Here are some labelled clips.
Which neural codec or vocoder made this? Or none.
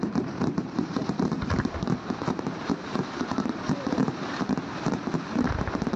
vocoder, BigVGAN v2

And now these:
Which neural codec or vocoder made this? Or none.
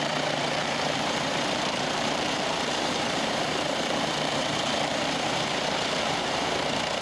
vocoder, BigVGAN v2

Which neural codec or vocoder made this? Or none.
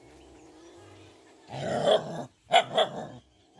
none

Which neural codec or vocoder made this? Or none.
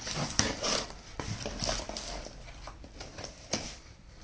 vocoder, BigVGAN v2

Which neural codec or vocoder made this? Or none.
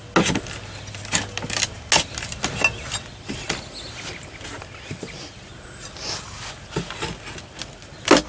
none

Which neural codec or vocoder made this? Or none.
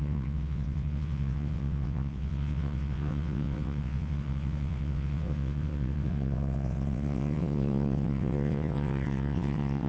vocoder, WaveNeXt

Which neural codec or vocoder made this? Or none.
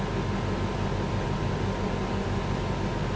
none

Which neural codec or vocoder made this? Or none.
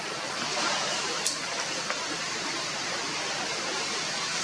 vocoder, BigVGAN v2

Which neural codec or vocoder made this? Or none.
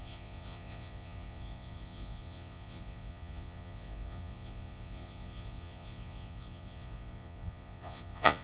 vocoder, Vocos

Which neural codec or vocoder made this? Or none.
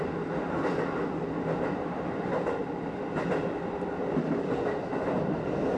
none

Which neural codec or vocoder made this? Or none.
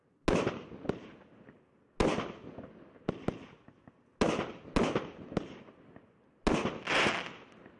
none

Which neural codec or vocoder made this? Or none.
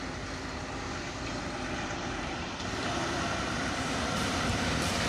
vocoder, BigVGAN v2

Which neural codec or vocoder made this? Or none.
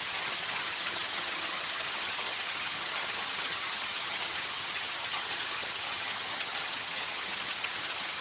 vocoder, HiFi-GAN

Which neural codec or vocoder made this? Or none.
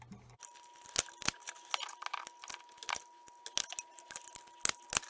none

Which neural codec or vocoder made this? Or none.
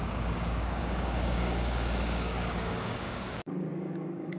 codec, DAC